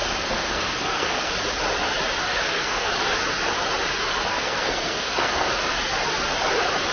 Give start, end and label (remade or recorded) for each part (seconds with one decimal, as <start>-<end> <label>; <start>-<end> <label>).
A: 0.0-1.3 remade; 1.3-2.2 recorded; 2.2-2.9 remade; 2.9-4.3 recorded; 4.3-5.5 remade; 5.5-6.9 recorded